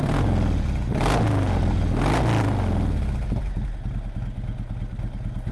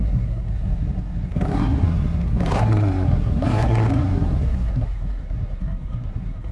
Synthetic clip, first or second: second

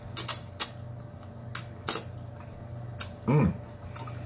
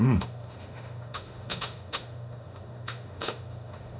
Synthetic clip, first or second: second